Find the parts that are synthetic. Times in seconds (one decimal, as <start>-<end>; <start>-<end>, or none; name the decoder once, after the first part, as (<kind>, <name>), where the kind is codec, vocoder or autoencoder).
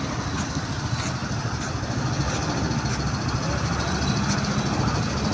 none